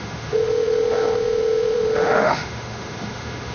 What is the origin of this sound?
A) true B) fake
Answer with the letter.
B